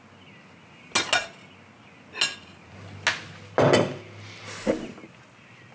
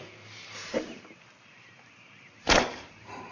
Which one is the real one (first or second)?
first